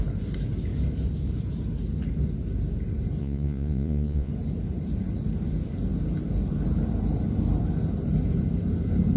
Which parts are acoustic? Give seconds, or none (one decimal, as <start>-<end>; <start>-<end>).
0.0-3.2; 4.3-9.2